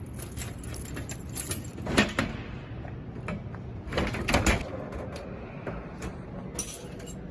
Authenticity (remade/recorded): recorded